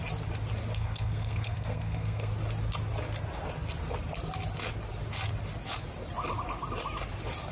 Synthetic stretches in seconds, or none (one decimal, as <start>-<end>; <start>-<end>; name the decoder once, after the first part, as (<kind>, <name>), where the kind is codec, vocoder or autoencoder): 0.7-2.3 (codec, SNAC)